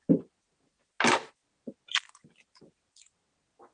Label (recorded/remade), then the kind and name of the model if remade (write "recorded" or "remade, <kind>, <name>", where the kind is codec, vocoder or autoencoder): recorded